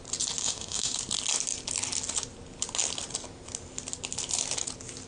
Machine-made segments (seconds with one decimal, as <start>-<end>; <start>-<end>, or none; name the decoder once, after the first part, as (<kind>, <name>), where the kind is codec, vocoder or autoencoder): 0.4-1.0 (autoencoder, DAC-VAE)